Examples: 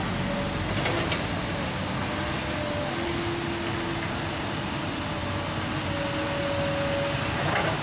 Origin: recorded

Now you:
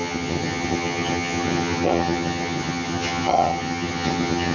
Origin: remade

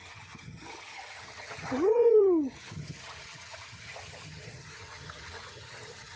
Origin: remade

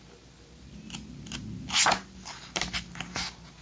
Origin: recorded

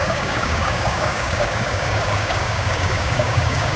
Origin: remade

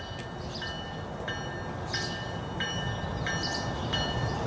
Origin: recorded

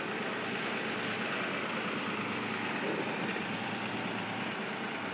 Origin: remade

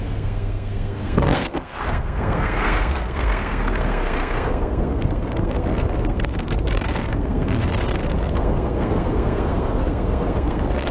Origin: remade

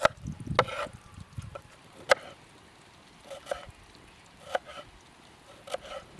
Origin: recorded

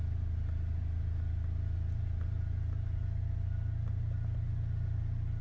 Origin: recorded